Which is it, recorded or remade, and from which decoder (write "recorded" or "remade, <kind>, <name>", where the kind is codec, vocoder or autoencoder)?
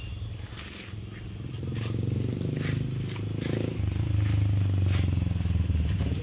recorded